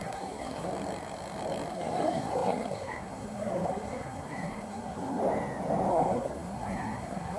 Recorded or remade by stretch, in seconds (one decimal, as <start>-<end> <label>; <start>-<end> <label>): 0.0-0.7 remade; 0.7-1.7 recorded; 1.7-5.2 remade; 5.2-5.9 recorded; 5.9-7.4 remade